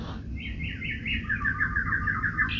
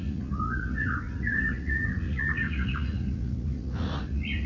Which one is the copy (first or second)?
second